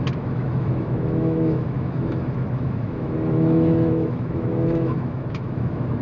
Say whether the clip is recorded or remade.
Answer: remade